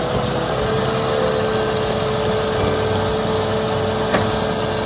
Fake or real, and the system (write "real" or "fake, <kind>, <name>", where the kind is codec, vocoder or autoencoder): real